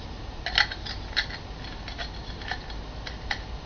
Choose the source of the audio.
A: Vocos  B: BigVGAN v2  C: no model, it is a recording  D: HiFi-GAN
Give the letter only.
C